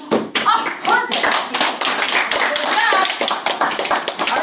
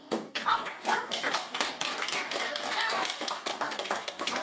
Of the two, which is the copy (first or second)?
second